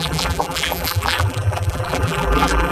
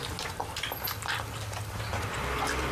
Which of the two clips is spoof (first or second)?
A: first